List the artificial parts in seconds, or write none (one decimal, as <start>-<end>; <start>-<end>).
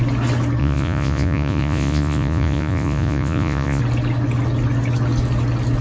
0.6-3.8